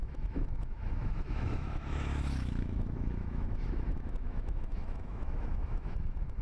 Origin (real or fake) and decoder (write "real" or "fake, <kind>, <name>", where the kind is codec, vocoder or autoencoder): fake, autoencoder, DAC-VAE